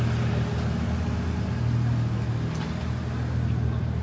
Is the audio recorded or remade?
recorded